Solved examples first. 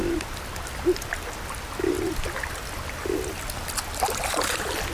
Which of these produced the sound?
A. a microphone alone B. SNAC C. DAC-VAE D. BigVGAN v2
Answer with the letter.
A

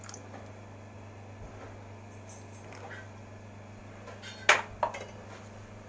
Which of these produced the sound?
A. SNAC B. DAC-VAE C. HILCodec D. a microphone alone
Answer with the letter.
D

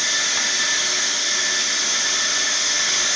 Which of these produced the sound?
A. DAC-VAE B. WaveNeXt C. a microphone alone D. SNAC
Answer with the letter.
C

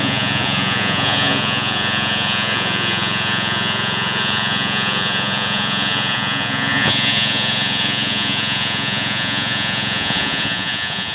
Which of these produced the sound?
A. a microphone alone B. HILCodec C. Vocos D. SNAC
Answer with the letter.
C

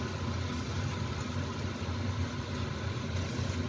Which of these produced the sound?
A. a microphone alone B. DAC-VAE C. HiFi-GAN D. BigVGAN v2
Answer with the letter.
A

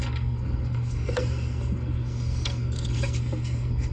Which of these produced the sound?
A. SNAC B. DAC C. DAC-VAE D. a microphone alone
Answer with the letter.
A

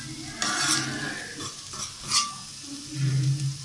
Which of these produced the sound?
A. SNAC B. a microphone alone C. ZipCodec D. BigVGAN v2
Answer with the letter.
B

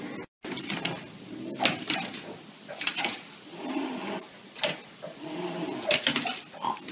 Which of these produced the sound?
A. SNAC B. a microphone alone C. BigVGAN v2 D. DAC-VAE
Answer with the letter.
B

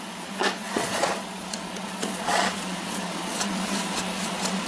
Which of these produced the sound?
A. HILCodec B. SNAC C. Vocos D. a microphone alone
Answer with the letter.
C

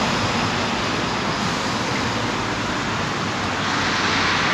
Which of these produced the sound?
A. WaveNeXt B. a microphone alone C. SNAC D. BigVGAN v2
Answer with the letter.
B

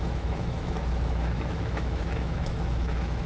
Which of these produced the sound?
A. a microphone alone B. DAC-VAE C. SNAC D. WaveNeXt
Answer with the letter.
B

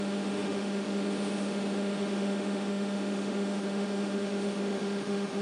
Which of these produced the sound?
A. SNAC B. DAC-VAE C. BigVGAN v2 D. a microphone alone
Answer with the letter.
B